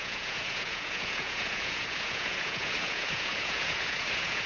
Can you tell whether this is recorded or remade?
remade